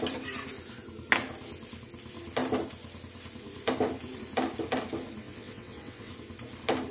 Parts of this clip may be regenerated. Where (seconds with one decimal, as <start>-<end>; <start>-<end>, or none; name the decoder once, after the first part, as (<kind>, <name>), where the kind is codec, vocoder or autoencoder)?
5.2-6.1 (vocoder, WaveNeXt)